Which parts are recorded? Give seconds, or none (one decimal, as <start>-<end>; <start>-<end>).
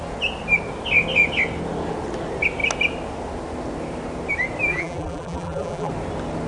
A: 0.0-4.7; 5.9-6.5